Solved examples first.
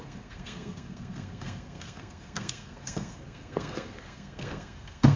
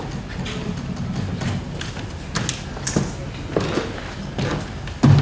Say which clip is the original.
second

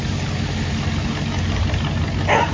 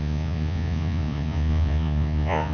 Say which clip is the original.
first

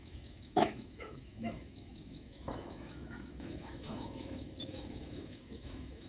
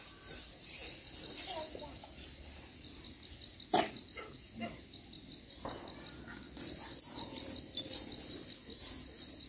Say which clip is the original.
second